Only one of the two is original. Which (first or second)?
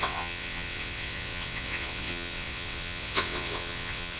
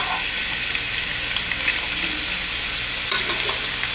second